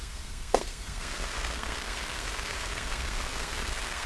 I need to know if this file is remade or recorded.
remade